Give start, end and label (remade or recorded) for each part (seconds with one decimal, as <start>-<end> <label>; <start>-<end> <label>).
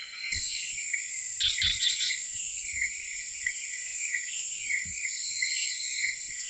0.0-1.1 remade; 1.1-1.8 recorded; 1.8-6.5 remade